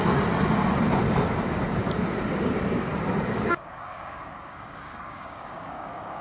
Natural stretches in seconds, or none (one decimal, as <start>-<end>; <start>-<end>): 0.0-2.8